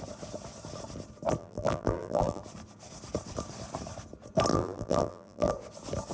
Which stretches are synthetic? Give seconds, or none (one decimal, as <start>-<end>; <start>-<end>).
1.4-2.4; 4.5-5.5